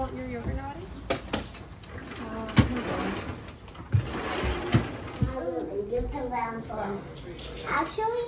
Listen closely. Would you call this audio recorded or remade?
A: recorded